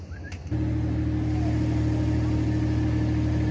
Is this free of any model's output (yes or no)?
yes